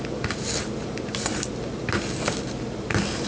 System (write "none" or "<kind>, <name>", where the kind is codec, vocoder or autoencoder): none